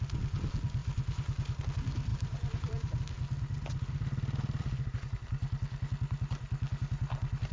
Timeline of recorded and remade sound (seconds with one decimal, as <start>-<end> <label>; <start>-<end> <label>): 0.0-0.8 recorded; 0.8-1.6 remade; 1.6-2.1 recorded; 2.1-3.0 remade; 3.0-7.5 recorded